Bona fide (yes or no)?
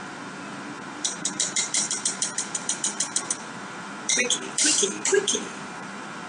no